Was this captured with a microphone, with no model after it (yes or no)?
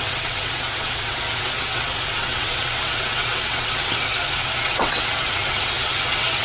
no